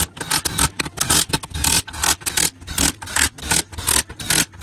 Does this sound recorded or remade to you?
recorded